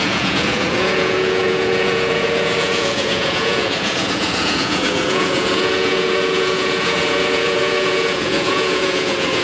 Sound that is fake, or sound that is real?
fake